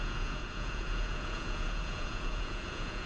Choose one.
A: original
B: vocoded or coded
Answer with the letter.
B